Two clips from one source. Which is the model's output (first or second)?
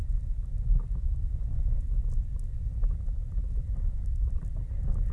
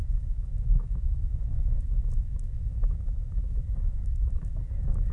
second